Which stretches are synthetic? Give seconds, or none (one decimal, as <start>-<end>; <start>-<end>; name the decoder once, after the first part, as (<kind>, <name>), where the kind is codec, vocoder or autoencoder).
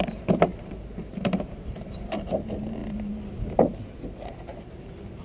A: 0.5-2.3 (vocoder, BigVGAN v2); 4.5-5.2